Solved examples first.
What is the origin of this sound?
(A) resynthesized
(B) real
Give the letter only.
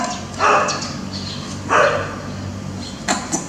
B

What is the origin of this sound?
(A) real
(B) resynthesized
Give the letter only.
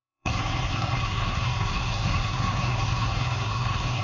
B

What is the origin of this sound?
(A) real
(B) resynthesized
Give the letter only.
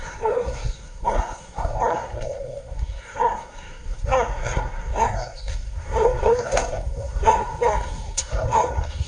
B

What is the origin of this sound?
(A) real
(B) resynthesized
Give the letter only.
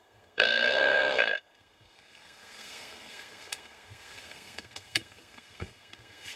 B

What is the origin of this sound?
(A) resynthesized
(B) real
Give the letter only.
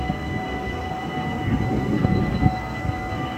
A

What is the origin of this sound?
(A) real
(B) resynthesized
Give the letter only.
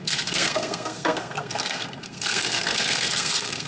B